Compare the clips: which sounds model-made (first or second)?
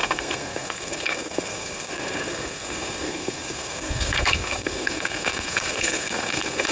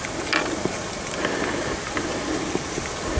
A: first